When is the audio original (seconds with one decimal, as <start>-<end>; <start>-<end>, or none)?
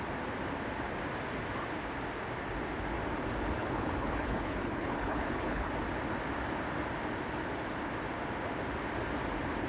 0.0-3.6; 5.7-9.7